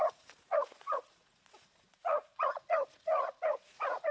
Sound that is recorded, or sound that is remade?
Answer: remade